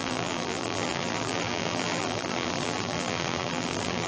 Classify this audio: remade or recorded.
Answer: remade